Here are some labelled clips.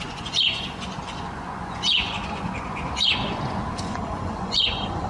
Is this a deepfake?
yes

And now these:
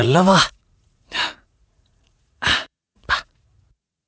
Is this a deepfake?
yes